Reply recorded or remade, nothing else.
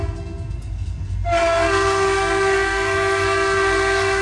remade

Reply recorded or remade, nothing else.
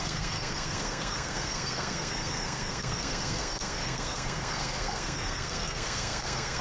remade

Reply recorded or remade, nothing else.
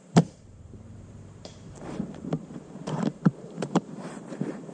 remade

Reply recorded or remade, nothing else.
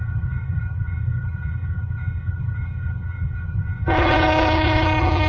remade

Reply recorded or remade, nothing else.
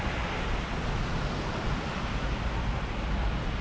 recorded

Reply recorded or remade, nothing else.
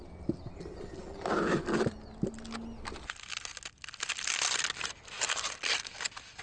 recorded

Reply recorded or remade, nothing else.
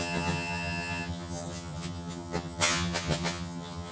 remade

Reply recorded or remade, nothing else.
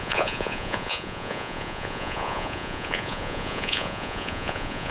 remade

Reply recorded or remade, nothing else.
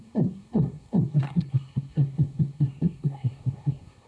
remade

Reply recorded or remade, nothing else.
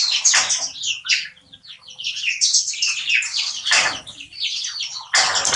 recorded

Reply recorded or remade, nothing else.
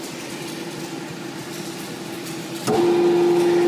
recorded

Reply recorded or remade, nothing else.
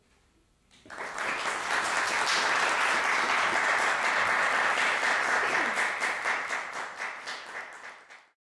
recorded